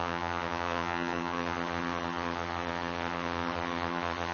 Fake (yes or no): yes